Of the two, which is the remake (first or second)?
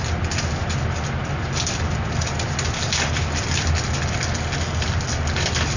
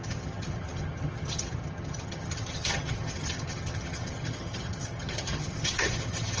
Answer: second